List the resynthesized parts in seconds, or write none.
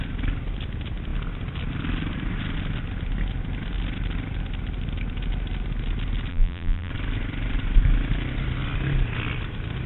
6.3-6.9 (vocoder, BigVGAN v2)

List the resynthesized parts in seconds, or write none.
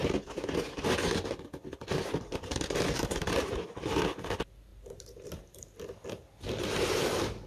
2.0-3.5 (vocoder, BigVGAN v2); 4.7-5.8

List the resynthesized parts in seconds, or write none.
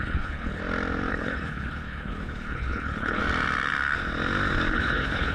0.0-0.6 (codec, HILCodec); 1.1-3.2; 4.7-5.3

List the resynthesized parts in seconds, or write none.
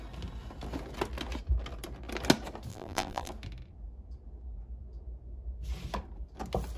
2.7-3.3 (vocoder, BigVGAN v2)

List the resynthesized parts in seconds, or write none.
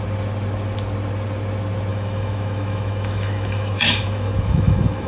1.9-5.1 (autoencoder, DAC-VAE)